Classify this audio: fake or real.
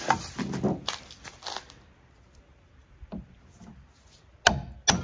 real